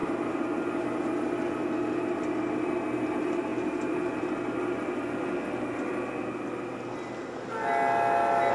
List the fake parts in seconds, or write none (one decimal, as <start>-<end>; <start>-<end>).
3.1-3.5